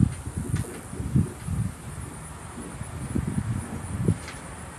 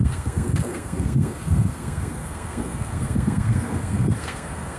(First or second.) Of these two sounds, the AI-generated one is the second